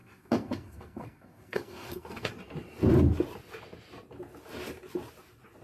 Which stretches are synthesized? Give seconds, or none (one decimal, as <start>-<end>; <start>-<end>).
0.0-2.3